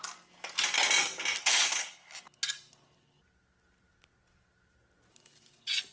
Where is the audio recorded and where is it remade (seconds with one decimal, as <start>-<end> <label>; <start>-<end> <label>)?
0.0-1.4 recorded; 1.4-2.2 remade; 2.2-5.9 recorded